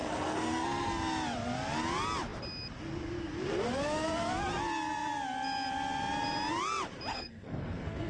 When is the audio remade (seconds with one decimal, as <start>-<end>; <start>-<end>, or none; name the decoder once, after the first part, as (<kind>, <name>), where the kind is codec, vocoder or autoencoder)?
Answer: 0.0-0.9 (codec, SNAC); 7.1-8.1